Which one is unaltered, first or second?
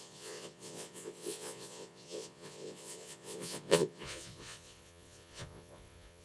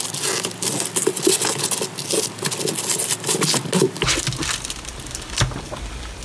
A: second